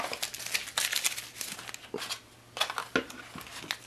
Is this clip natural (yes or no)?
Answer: yes